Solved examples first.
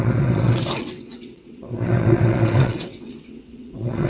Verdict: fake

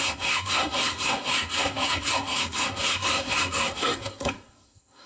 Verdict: fake